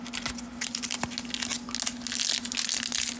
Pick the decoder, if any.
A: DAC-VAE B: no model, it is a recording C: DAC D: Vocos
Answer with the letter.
B